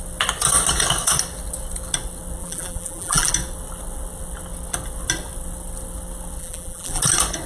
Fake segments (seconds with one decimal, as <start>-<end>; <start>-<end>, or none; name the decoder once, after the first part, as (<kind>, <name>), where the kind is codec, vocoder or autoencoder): 2.4-3.3 (vocoder, BigVGAN v2); 6.4-7.0